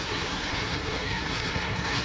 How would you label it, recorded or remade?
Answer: remade